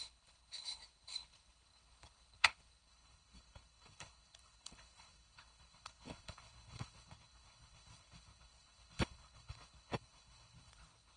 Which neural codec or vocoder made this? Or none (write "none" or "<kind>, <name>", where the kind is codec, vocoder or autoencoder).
codec, HILCodec